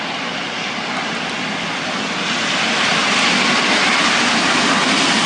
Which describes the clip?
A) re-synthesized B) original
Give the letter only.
B